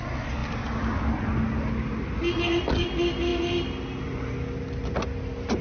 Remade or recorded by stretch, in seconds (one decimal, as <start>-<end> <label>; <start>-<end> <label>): 0.0-5.6 recorded